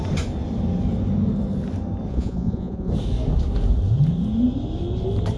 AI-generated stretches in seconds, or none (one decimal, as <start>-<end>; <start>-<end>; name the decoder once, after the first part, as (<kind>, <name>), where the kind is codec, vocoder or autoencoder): 2.1-2.9 (vocoder, Vocos)

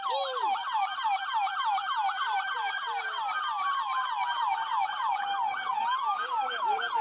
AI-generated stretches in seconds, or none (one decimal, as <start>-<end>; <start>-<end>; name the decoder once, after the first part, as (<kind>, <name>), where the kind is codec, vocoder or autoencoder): 5.7-7.0 (vocoder, BigVGAN v2)